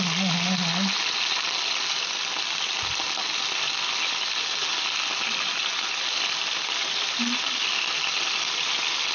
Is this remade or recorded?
recorded